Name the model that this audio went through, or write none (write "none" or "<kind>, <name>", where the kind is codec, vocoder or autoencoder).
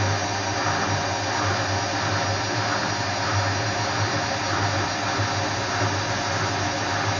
none